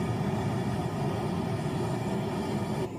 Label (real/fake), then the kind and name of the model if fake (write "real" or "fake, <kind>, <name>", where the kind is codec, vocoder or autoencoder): real